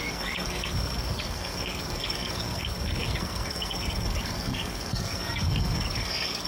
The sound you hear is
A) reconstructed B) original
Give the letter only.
A